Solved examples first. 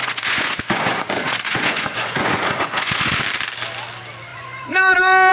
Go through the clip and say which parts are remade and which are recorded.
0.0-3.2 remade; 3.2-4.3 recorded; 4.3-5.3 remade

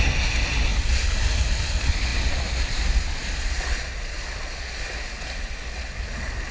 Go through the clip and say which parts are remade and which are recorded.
0.0-6.5 recorded

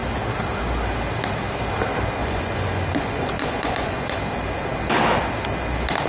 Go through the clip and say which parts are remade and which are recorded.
0.0-2.2 recorded; 2.2-4.2 remade; 4.2-6.1 recorded

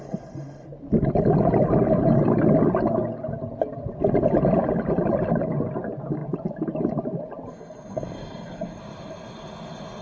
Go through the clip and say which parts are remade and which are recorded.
0.0-10.0 recorded

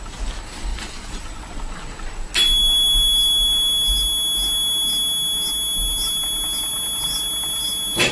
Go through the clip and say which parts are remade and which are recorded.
0.0-0.7 recorded; 0.7-1.5 remade; 1.5-8.1 recorded

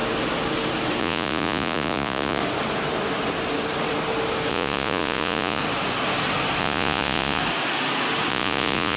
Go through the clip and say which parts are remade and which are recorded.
0.0-1.0 recorded; 1.0-2.4 remade; 2.4-4.5 recorded; 4.5-5.6 remade; 5.6-6.6 recorded; 6.6-7.4 remade; 7.4-8.3 recorded; 8.3-9.0 remade

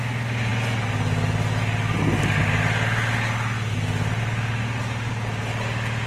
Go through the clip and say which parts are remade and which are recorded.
0.0-6.1 recorded